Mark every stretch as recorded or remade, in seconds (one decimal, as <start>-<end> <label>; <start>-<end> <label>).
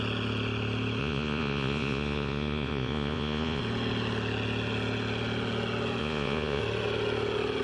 0.0-1.0 recorded; 1.0-3.6 remade; 3.6-6.0 recorded; 6.0-6.6 remade; 6.6-7.6 recorded